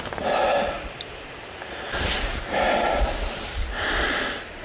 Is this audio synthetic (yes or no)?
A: no